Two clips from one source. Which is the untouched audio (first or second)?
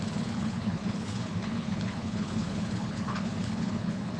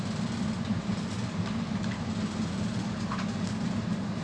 second